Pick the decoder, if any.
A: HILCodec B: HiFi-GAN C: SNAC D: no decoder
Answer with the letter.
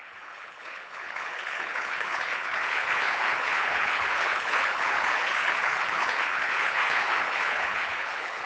A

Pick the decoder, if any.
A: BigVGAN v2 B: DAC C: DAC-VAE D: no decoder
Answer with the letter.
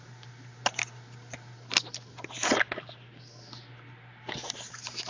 D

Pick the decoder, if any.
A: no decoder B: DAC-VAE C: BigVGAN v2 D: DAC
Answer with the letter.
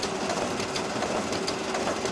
A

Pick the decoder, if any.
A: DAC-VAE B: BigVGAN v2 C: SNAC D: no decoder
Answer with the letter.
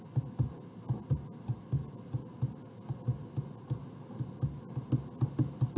D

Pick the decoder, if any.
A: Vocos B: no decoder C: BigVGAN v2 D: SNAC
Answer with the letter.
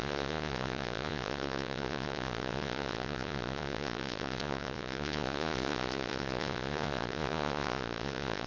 A